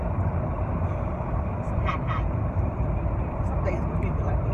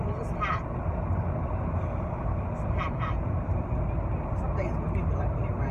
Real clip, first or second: second